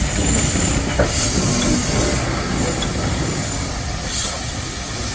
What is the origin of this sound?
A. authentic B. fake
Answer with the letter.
A